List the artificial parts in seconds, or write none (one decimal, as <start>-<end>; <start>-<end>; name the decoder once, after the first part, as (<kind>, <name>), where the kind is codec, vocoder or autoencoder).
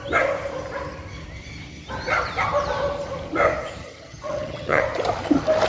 3.8-4.8 (vocoder, HiFi-GAN)